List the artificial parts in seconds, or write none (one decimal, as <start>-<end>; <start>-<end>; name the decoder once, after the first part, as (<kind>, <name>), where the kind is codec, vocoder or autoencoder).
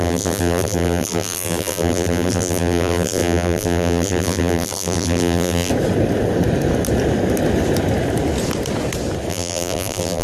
0.0-5.7 (vocoder, BigVGAN v2); 9.3-10.2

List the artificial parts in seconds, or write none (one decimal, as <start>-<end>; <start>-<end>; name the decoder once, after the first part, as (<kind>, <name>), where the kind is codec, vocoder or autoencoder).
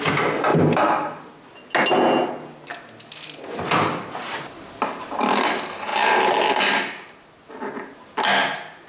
0.5-1.3 (vocoder, BigVGAN v2); 5.9-6.6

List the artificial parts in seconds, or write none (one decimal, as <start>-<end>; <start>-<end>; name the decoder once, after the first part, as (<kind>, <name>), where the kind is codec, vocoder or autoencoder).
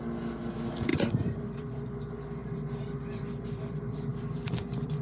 0.9-1.9 (vocoder, BigVGAN v2); 2.4-3.6; 4.1-5.0